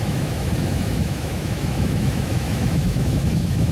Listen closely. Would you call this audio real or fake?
fake